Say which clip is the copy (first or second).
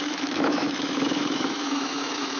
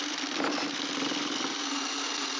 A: first